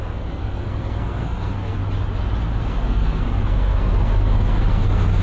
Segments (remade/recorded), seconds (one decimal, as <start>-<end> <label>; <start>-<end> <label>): 0.0-1.8 remade; 1.8-2.6 recorded; 2.6-5.2 remade